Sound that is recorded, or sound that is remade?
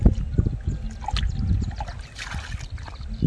recorded